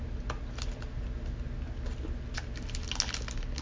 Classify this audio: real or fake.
real